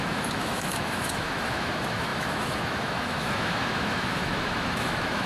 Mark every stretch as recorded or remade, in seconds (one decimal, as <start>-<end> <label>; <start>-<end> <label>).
0.0-5.3 remade